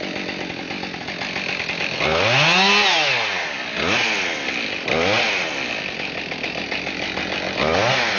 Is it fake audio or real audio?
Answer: real